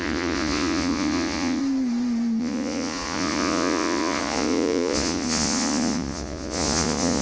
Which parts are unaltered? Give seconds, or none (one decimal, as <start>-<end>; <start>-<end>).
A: 1.6-2.4